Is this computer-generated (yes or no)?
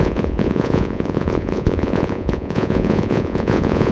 yes